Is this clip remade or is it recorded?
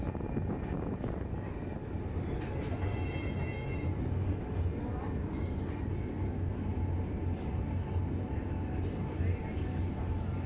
recorded